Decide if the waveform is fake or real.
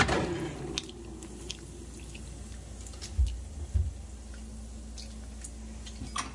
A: real